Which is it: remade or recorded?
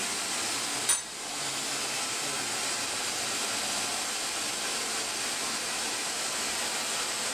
recorded